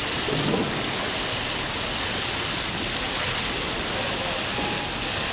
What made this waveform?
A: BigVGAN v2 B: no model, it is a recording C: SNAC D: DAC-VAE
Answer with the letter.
B